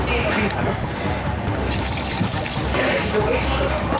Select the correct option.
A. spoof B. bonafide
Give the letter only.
B